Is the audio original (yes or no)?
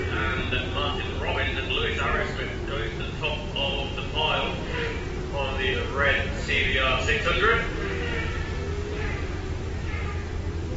yes